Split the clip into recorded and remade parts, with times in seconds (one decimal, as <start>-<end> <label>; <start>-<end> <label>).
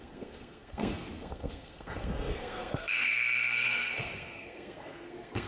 0.0-5.5 remade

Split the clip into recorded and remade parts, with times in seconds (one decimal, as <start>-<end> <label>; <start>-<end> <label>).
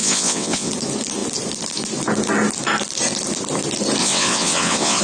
0.0-0.7 remade; 0.7-4.0 recorded; 4.0-5.0 remade